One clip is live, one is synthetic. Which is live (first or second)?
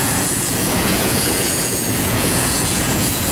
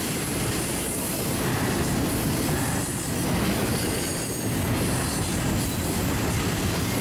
second